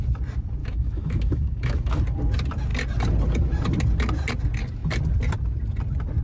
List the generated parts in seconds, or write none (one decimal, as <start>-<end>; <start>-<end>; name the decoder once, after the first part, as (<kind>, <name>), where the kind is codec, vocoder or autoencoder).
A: 0.6-2.0 (autoencoder, DAC-VAE)

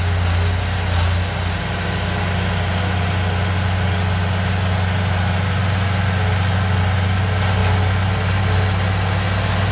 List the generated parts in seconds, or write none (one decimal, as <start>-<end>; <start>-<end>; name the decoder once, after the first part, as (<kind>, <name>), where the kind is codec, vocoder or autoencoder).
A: none

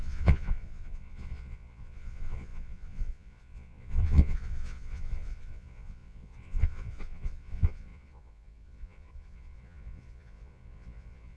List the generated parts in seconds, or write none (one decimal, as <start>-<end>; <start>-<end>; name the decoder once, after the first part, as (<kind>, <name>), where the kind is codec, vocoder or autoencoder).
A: 0.0-11.4 (vocoder, Vocos)

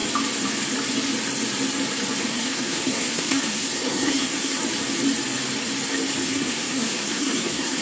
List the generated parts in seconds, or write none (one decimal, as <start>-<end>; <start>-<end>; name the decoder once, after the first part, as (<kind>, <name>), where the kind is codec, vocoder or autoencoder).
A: 2.3-4.6 (codec, SNAC); 6.2-7.8

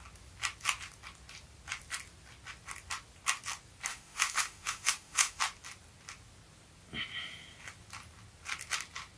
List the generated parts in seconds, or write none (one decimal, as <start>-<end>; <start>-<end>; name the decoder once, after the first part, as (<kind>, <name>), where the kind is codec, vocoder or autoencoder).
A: 3.9-5.4 (autoencoder, DAC-VAE)

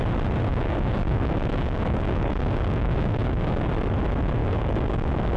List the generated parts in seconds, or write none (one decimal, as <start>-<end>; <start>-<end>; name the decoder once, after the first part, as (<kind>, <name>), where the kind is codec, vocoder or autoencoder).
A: 0.5-3.7 (codec, DAC); 4.4-5.4